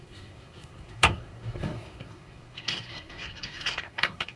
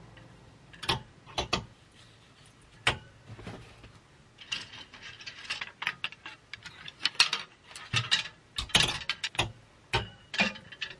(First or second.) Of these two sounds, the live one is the second